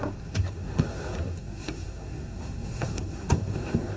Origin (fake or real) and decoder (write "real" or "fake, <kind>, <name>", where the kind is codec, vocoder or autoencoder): fake, codec, SNAC